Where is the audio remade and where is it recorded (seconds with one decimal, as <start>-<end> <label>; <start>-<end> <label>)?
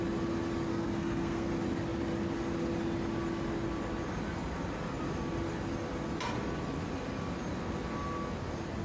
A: 0.0-0.7 recorded; 0.7-1.5 remade; 1.5-8.8 recorded